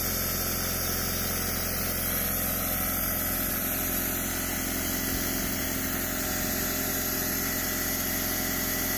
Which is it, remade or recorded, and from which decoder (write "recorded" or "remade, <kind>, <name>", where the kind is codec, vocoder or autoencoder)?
recorded